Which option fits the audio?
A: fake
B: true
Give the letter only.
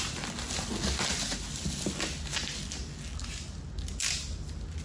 B